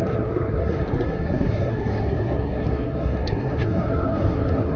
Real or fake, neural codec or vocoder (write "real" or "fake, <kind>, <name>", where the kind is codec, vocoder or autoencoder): fake, codec, SNAC